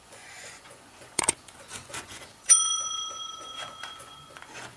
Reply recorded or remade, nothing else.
remade